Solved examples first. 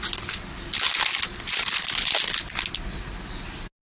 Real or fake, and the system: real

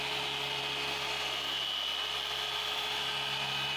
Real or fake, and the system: real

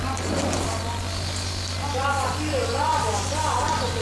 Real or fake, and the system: real